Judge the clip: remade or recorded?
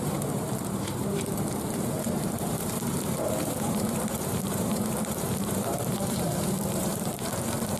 remade